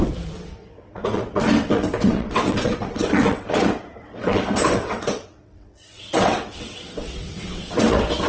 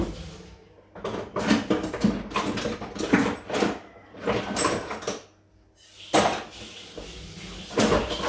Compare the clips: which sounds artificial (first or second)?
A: first